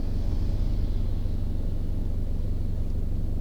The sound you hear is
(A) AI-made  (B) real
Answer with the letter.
B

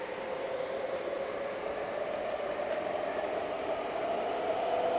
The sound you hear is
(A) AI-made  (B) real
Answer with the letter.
B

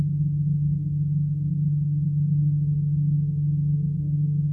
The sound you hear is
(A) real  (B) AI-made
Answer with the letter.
B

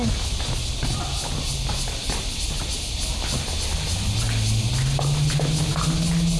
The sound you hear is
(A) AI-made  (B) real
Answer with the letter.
B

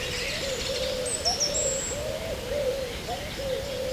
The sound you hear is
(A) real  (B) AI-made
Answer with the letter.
A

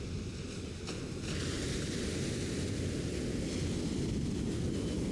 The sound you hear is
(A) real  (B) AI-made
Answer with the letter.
A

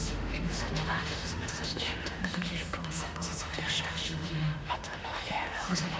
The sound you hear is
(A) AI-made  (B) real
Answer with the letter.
A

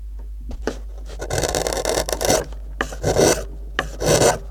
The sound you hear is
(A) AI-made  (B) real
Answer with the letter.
B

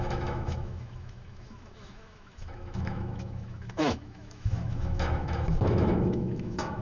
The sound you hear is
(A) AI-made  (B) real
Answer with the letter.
A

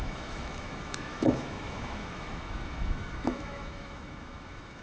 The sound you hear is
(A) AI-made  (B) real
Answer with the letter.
A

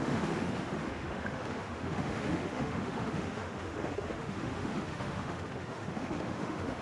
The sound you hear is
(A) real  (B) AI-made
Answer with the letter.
B